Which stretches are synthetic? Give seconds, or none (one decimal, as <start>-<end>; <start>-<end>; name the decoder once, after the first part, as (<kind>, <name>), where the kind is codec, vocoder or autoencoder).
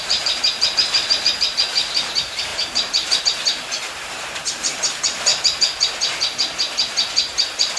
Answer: 0.0-5.3 (vocoder, BigVGAN v2); 7.1-7.8